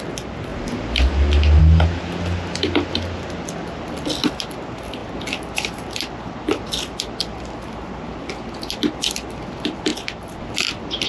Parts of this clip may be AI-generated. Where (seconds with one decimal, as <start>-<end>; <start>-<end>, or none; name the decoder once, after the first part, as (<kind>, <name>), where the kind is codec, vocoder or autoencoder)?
none